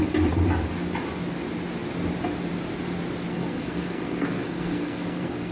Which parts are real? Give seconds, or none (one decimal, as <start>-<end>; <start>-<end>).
0.0-3.3